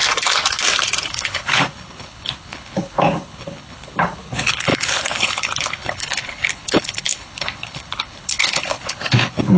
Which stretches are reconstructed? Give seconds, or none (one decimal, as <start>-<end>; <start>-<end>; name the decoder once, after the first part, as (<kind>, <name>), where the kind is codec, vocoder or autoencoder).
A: 1.1-9.6 (codec, HILCodec)